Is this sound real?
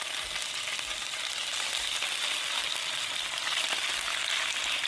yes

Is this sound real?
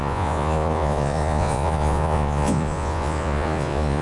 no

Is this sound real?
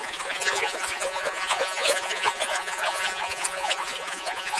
no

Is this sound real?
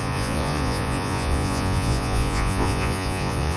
no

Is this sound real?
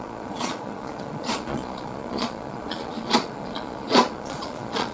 no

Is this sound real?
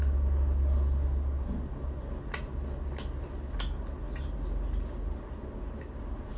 yes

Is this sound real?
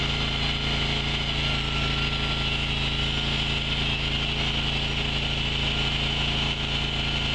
yes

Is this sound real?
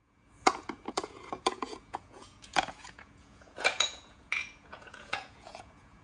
no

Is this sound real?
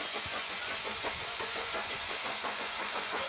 no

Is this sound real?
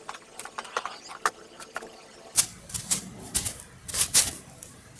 yes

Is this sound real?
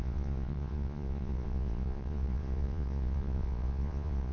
no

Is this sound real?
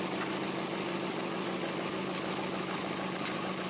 yes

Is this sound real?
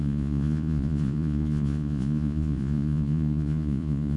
no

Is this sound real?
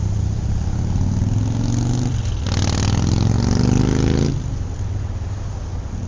yes